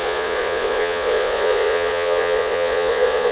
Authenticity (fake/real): fake